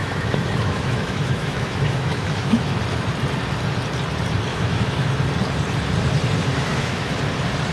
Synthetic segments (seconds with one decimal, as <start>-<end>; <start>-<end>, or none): 0.0-2.8; 4.5-5.1; 6.7-7.2